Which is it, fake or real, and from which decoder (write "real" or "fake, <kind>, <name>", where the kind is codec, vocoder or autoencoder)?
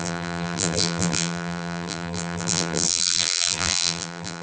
fake, vocoder, BigVGAN v2